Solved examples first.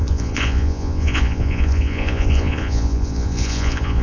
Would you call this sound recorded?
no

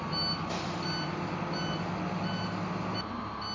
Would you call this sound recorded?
yes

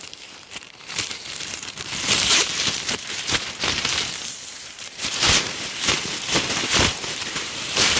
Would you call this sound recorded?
no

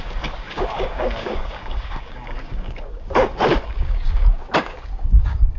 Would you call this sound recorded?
no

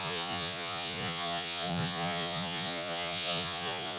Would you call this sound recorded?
no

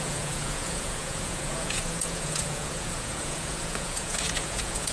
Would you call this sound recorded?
no